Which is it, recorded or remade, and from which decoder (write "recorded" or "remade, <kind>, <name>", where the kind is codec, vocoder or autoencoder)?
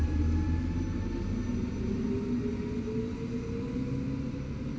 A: recorded